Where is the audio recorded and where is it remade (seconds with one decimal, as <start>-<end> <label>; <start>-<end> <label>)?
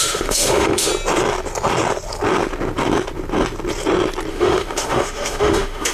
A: 0.0-0.9 remade; 0.9-4.3 recorded; 4.3-5.9 remade